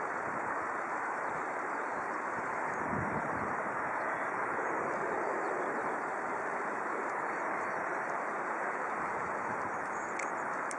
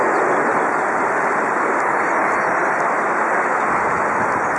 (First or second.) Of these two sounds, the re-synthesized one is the first